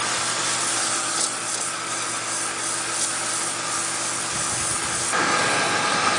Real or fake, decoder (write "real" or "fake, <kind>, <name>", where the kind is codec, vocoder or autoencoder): real